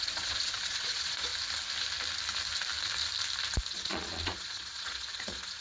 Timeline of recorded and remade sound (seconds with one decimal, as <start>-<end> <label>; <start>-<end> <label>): 0.0-1.3 remade; 1.3-3.7 recorded; 3.7-5.6 remade